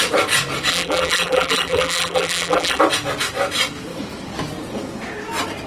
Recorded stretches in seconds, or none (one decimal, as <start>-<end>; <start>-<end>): 0.0-0.7; 2.8-5.7